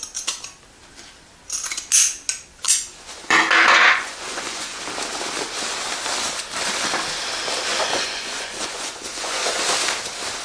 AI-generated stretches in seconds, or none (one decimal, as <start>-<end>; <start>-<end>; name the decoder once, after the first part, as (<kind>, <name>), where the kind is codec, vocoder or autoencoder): 2.5-4.8 (vocoder, Vocos); 7.7-9.6